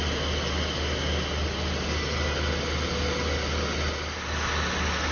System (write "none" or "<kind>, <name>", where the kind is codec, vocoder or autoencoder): none